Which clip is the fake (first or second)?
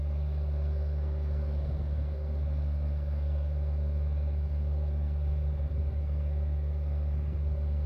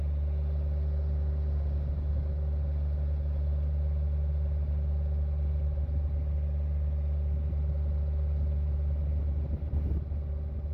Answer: first